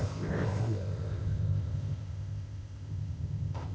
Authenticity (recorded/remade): remade